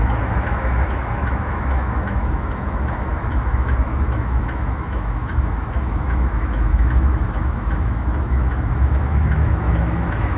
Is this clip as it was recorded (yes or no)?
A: no